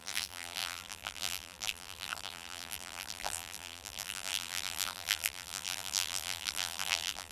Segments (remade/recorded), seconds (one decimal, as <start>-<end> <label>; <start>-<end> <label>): 0.0-7.3 remade